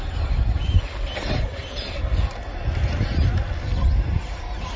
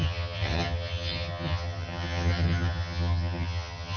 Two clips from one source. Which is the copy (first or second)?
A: second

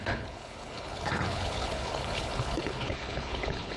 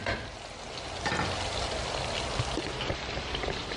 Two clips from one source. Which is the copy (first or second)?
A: first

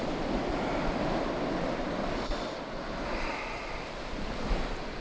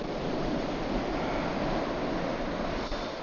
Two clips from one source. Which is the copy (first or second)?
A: first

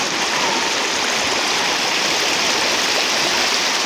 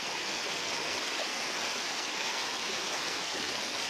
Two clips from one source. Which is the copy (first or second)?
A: second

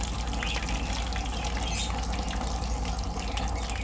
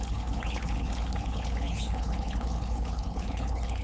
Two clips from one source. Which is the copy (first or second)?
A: second